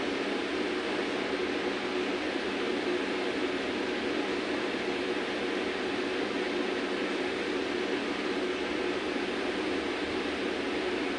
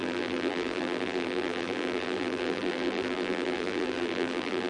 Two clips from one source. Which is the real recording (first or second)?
first